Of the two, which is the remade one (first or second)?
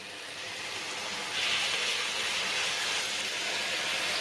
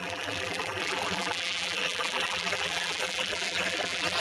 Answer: second